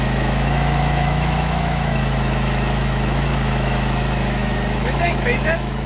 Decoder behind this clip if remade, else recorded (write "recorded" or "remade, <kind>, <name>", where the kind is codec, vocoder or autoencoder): remade, autoencoder, DAC-VAE